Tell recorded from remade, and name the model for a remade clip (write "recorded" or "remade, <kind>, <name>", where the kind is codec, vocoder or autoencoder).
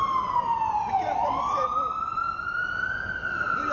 remade, vocoder, BigVGAN v2